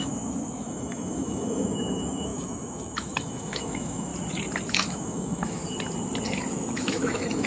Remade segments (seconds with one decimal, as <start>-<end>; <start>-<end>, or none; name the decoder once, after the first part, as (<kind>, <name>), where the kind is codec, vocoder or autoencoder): 0.0-4.1 (autoencoder, DAC-VAE); 4.7-5.6; 6.5-7.5